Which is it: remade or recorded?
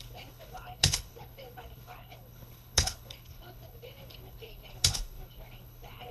remade